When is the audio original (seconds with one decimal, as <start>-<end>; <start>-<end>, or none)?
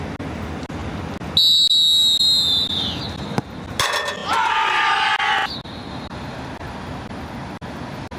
0.0-8.2